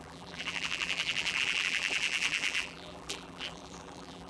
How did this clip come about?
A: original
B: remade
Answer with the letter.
B